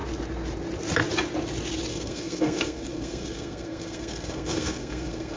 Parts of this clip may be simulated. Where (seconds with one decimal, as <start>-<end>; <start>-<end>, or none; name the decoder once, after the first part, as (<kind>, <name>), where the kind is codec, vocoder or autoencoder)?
1.9-5.4 (codec, SNAC)

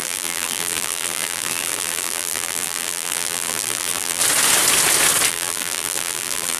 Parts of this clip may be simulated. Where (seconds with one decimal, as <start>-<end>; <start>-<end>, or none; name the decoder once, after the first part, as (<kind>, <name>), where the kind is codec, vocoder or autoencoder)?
0.0-4.2 (vocoder, BigVGAN v2); 5.3-6.6

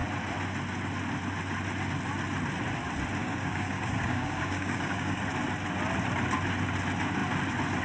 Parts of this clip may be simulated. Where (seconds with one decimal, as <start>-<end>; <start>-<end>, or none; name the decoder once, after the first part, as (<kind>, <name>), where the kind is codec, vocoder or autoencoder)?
3.2-5.2 (codec, DAC)

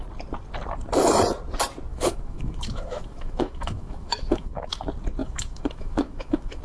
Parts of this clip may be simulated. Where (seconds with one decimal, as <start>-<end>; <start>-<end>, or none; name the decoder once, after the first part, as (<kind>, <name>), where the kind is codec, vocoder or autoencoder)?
1.9-4.8 (autoencoder, DAC-VAE); 5.2-6.6

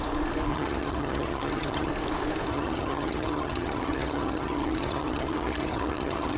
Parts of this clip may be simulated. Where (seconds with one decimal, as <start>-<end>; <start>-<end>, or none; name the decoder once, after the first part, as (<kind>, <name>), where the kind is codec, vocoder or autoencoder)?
0.5-1.9 (vocoder, HiFi-GAN); 2.5-6.4

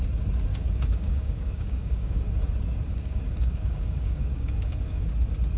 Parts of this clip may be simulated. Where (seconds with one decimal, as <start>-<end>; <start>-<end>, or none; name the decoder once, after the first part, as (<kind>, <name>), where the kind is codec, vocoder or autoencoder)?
0.5-2.3 (codec, DAC); 2.9-5.1